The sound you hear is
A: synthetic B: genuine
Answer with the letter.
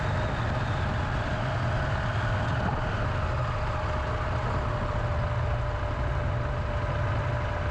B